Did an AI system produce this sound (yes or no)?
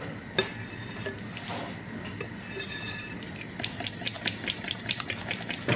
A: no